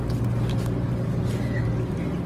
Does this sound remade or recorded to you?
recorded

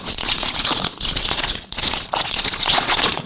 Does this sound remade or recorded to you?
remade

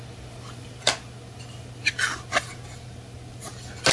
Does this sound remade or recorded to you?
recorded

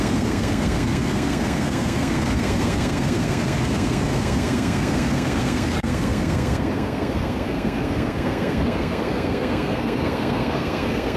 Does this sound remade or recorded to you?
remade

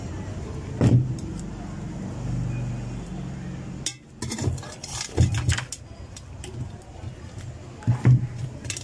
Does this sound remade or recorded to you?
recorded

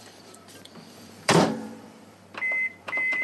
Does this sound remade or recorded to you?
remade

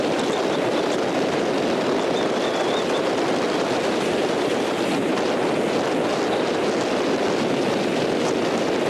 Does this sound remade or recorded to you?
recorded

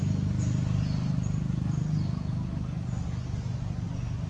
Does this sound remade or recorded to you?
recorded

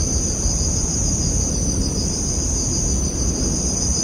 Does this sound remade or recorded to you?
remade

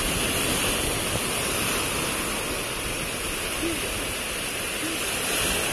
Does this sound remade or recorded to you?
recorded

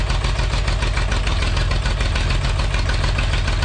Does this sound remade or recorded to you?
recorded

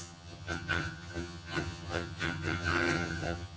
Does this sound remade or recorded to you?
remade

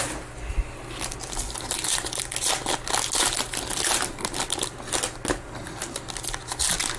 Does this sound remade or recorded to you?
recorded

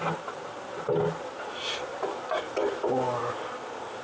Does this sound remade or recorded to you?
recorded